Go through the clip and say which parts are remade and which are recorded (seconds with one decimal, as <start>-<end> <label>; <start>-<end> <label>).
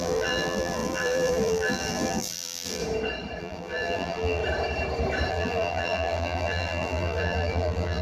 0.0-2.8 remade; 2.8-3.4 recorded; 3.4-4.4 remade; 4.4-5.3 recorded; 5.3-8.0 remade